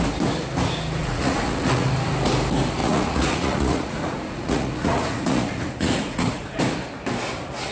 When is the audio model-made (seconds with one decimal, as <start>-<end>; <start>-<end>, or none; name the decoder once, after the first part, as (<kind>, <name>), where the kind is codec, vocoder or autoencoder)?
1.0-1.9 (vocoder, Vocos); 2.8-6.6